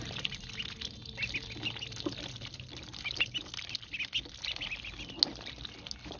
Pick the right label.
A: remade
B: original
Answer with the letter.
B